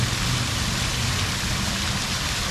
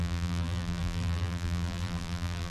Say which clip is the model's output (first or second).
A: second